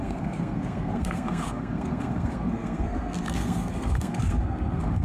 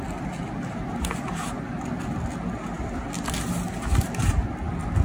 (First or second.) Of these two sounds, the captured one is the second